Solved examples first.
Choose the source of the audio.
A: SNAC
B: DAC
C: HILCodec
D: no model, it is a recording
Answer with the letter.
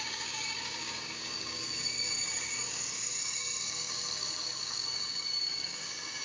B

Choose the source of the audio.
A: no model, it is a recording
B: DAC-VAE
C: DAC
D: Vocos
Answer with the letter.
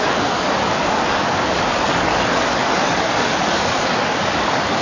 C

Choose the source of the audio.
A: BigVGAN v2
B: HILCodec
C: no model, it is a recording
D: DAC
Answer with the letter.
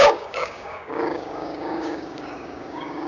D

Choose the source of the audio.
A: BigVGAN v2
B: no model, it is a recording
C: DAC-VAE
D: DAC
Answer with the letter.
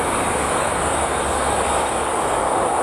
D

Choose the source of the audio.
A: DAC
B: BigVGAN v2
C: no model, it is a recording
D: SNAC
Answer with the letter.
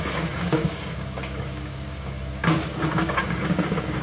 A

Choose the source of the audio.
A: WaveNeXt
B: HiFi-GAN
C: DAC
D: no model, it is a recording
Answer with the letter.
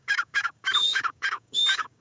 C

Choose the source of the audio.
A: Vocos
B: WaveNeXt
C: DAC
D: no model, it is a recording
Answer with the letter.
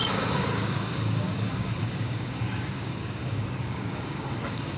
C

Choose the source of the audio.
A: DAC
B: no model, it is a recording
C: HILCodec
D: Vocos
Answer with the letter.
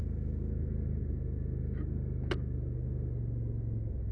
B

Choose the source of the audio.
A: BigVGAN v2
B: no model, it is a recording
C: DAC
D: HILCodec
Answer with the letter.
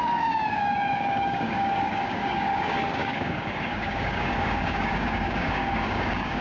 C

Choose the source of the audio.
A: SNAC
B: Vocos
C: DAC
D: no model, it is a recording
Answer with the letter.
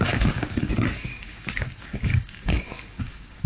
C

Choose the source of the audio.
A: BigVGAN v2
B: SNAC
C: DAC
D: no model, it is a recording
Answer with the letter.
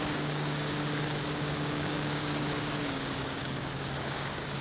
C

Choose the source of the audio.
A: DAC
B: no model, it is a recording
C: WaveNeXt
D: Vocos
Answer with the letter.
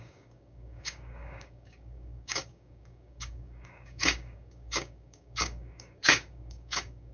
A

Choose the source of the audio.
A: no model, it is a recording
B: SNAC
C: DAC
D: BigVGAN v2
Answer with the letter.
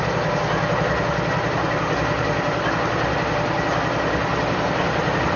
A